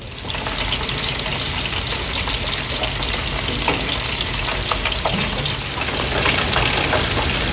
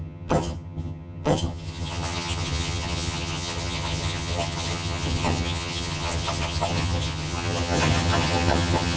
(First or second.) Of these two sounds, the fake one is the second